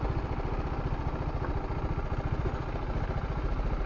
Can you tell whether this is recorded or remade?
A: recorded